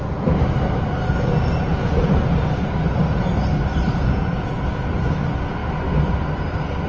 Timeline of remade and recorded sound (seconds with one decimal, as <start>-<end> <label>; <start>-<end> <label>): 0.0-1.7 recorded; 1.7-2.2 remade; 2.2-3.9 recorded; 3.9-4.9 remade; 4.9-6.9 recorded